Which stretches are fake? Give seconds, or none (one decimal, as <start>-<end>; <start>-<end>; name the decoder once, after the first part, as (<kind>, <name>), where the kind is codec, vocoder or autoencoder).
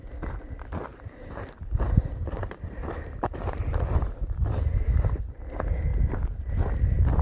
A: 0.9-5.2 (vocoder, BigVGAN v2)